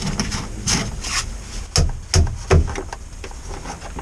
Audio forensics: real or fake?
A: real